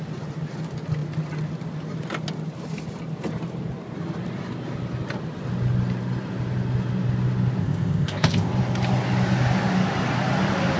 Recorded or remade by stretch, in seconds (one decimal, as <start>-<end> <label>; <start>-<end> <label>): 0.0-7.6 recorded; 7.6-8.5 remade; 8.5-10.8 recorded